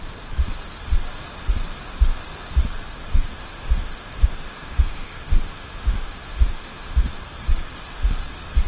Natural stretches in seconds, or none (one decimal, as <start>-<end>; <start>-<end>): 0.0-2.9; 7.1-8.7